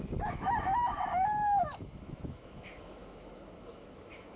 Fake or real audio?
fake